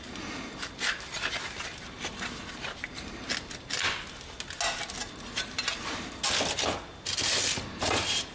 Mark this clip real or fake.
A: real